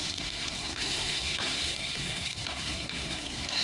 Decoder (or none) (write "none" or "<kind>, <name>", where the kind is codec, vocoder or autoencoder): codec, SNAC